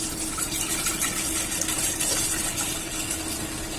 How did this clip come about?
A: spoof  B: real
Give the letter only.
B